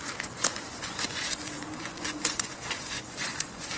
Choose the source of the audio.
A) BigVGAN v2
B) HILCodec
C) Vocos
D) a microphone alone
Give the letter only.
C